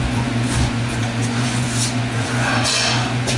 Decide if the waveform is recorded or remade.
remade